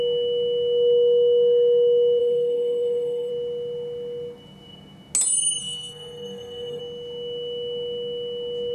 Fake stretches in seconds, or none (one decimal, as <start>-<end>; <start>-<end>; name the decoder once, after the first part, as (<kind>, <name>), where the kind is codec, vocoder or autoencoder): 2.2-3.3 (codec, SNAC); 5.6-6.8